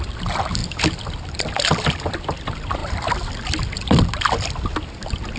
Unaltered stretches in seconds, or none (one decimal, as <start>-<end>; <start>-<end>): 0.0-5.4